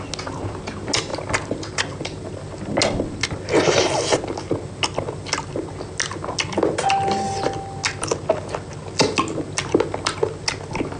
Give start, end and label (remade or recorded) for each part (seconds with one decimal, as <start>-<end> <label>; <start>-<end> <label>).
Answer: 0.0-11.0 recorded